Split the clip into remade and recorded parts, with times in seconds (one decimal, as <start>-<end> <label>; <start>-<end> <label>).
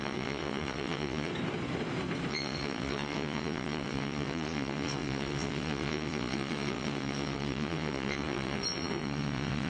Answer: 0.0-1.3 remade; 1.3-2.3 recorded; 2.3-9.7 remade